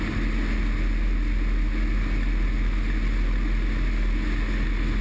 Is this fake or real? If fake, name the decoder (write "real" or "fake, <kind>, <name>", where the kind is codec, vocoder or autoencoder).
real